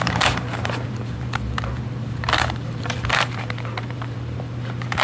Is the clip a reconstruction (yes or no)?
yes